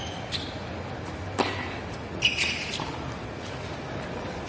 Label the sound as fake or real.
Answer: real